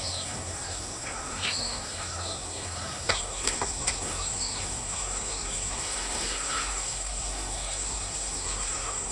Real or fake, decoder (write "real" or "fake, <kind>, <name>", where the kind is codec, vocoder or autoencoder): fake, codec, SNAC